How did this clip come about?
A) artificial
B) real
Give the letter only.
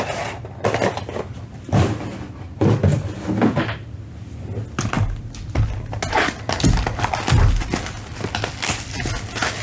B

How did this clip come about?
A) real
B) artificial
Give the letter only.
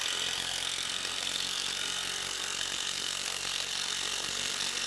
B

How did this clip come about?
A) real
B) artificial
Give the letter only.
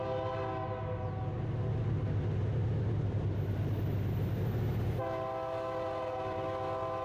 A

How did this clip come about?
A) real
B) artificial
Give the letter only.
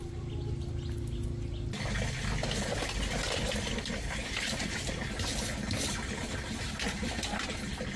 A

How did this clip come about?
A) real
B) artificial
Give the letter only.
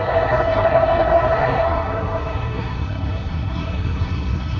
B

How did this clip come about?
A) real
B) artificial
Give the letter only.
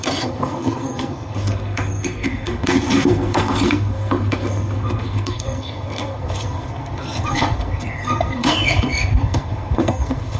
B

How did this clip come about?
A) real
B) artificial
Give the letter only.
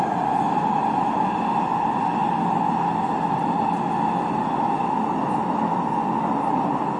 A